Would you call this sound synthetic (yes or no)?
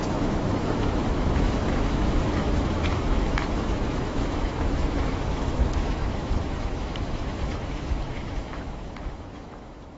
yes